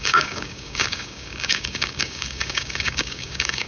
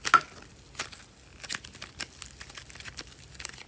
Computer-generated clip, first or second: first